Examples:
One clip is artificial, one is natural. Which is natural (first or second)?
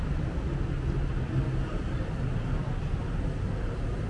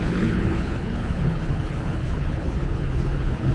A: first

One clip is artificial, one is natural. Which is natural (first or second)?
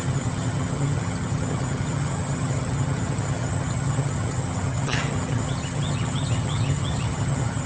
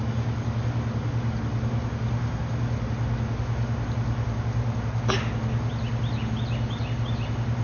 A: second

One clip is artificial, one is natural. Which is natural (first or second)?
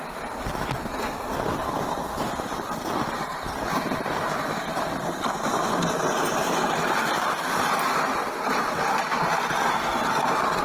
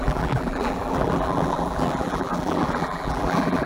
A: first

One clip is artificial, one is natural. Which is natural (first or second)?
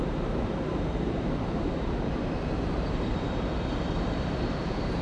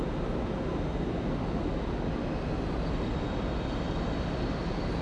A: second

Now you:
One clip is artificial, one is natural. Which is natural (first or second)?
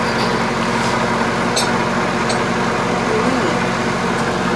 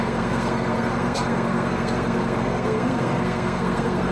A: first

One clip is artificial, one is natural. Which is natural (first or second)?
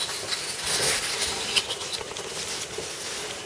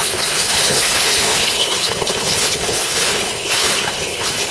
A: first